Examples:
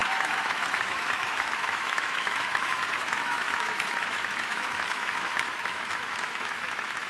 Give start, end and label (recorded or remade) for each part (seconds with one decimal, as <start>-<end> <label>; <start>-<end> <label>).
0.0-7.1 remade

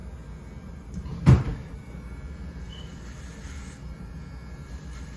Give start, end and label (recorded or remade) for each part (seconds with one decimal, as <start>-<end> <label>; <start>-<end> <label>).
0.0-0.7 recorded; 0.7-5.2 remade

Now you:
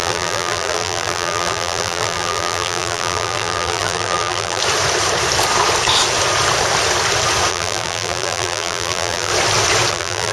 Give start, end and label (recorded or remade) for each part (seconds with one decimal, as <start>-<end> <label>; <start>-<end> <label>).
0.0-4.6 remade; 4.6-7.5 recorded; 7.5-9.3 remade; 9.3-9.9 recorded; 9.9-10.3 remade